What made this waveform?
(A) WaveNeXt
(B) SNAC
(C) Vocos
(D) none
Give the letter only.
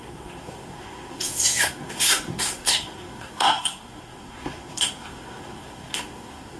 B